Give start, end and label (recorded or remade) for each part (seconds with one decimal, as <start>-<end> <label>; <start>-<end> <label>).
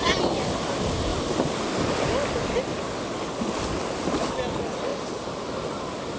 0.0-6.2 recorded